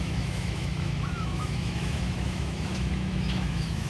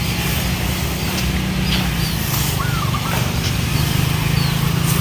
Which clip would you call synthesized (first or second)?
first